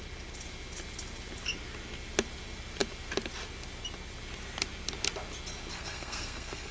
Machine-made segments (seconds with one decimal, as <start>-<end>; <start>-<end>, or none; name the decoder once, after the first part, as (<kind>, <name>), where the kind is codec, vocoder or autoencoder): 5.7-6.7 (codec, SNAC)